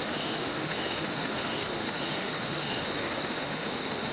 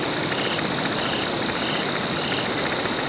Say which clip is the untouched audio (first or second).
second